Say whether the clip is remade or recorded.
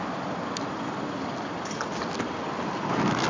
recorded